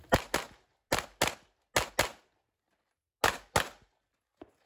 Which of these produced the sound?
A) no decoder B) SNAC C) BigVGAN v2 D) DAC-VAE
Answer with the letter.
A